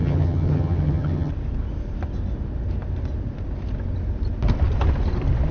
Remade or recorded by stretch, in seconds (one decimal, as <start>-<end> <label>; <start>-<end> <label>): 0.0-1.3 remade; 1.3-5.5 recorded